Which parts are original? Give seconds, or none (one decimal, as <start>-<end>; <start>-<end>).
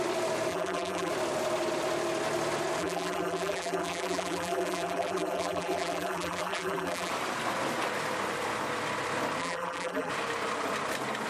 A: 0.0-0.5; 1.1-2.8; 7.1-9.4; 10.1-11.3